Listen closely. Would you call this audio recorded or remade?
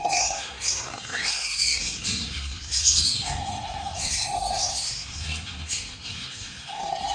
remade